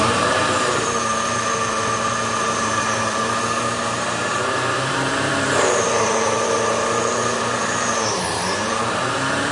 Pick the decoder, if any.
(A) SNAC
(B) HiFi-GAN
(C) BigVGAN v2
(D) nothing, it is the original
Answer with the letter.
C